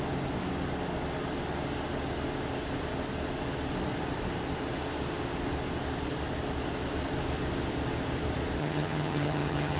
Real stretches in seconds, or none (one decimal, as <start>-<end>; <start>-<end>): 0.0-8.6